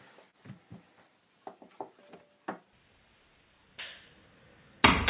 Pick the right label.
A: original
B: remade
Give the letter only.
A